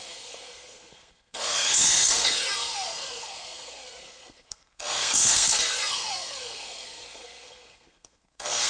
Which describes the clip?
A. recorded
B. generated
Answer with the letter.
B